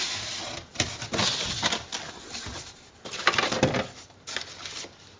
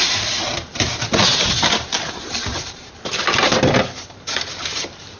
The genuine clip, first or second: first